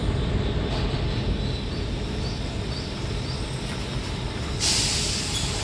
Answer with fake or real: real